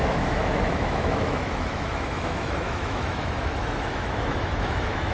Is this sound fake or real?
fake